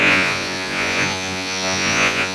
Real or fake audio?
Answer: fake